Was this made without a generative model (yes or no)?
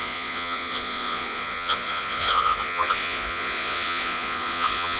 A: no